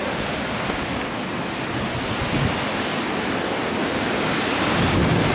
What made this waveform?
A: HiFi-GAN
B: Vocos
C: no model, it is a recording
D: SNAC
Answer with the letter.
C